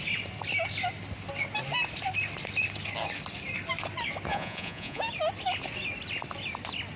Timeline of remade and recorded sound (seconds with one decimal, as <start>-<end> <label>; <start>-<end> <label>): 0.0-4.3 recorded; 4.3-5.0 remade; 5.0-7.0 recorded

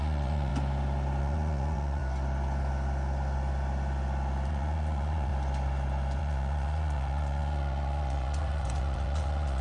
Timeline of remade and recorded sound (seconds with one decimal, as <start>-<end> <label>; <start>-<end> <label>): 0.0-0.5 remade; 0.5-1.2 recorded; 1.2-2.0 remade; 2.0-4.5 recorded; 4.5-5.3 remade; 5.3-6.2 recorded; 6.2-9.6 remade

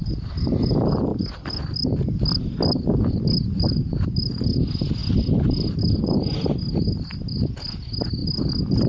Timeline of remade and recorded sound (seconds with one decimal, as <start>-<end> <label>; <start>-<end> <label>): 0.0-8.9 recorded

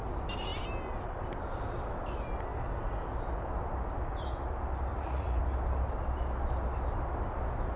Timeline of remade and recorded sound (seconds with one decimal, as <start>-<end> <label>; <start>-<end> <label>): 0.0-4.9 recorded; 4.9-5.4 remade; 5.4-7.8 recorded

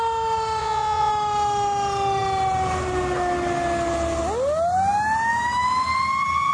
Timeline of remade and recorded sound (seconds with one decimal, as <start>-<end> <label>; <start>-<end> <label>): 0.0-0.6 recorded; 0.6-1.1 remade; 1.1-6.5 recorded

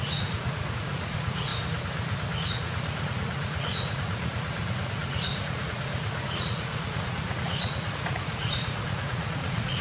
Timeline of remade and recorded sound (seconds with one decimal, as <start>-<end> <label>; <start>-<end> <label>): 0.0-1.5 remade; 1.5-2.5 recorded; 2.5-9.8 remade